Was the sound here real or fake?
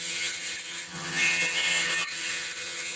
fake